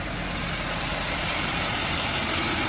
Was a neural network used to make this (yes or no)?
no